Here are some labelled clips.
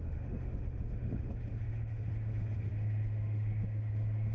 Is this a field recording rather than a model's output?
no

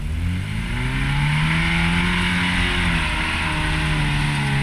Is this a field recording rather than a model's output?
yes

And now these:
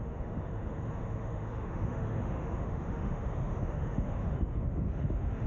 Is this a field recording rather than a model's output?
no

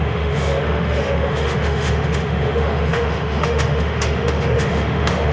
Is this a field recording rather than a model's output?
no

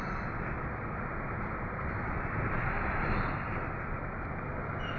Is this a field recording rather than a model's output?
yes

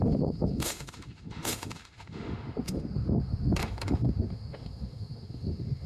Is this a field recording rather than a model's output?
no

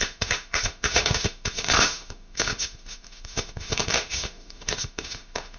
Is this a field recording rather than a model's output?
no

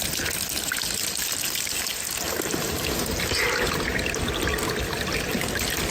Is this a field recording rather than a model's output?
yes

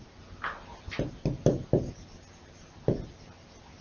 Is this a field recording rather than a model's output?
yes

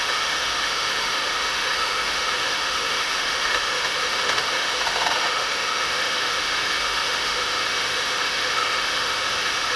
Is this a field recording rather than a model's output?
no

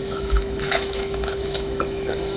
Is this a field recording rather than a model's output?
no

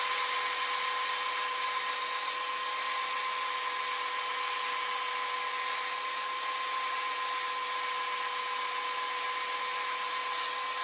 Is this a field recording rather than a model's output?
yes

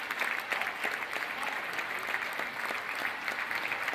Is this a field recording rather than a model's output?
yes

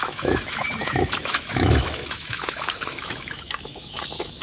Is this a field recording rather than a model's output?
no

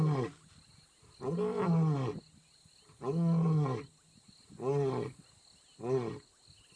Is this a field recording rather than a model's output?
yes